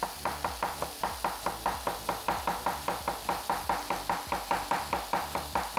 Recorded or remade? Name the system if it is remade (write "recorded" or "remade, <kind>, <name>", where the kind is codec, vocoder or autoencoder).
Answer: recorded